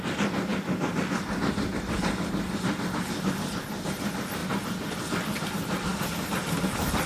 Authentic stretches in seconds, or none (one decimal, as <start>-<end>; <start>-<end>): 0.0-4.4; 5.5-7.1